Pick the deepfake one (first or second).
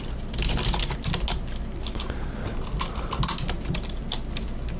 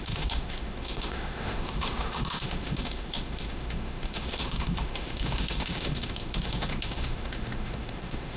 second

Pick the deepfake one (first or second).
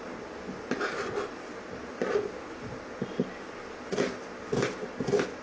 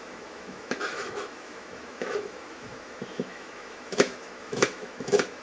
second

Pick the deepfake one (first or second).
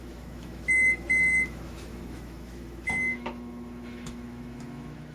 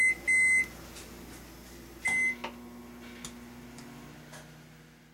first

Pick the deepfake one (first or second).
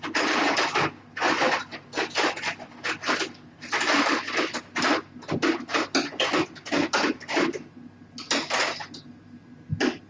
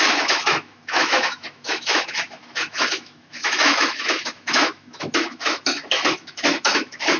second